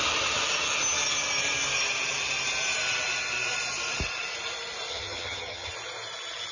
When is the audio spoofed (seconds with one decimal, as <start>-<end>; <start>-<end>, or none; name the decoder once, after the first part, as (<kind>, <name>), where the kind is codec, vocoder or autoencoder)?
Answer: 4.9-5.7 (vocoder, HiFi-GAN)